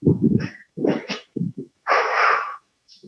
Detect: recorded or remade remade